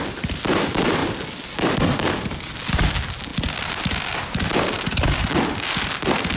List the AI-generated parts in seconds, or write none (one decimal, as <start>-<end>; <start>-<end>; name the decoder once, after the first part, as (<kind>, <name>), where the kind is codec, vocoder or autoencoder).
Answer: none